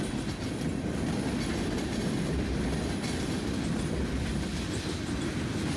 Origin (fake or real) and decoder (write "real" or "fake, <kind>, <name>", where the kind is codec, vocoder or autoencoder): real